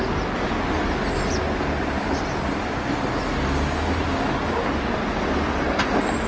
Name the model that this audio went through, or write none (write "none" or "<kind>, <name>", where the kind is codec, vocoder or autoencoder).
none